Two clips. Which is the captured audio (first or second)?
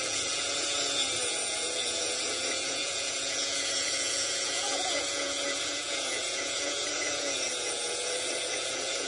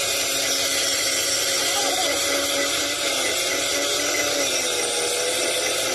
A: second